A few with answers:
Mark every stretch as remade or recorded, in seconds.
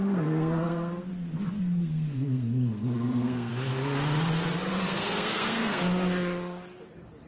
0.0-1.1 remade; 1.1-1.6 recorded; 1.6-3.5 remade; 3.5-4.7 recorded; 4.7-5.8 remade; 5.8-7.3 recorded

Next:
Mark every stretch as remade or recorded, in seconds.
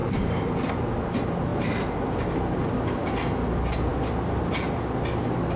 0.0-0.7 remade; 0.7-1.5 recorded; 1.5-2.7 remade; 2.7-5.6 recorded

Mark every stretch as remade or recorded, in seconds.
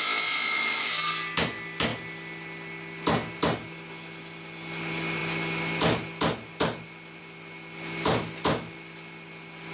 0.0-9.7 recorded